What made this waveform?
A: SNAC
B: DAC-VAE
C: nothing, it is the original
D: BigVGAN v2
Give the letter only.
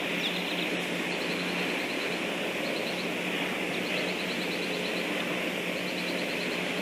C